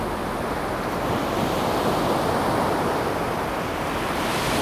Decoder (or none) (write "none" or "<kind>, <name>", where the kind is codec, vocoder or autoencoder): none